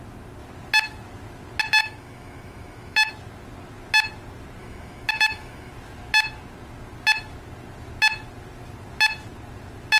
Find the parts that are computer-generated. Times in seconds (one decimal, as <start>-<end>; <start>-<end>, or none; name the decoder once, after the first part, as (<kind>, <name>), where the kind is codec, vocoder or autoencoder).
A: 1.8-3.1 (autoencoder, DAC-VAE); 4.6-5.7